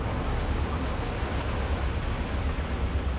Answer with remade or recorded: recorded